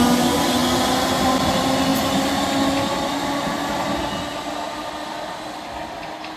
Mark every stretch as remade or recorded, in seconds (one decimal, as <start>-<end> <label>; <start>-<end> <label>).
0.0-6.4 recorded